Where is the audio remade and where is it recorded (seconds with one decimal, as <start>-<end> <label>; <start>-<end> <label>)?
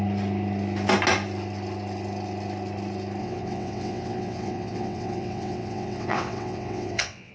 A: 0.0-3.2 recorded; 3.2-7.3 remade